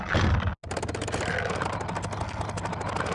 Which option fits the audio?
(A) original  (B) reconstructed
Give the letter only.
A